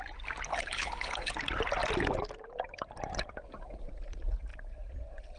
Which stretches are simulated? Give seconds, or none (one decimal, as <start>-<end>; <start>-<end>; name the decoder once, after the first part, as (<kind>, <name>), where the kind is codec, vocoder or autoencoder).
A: 0.5-1.3 (codec, HILCodec)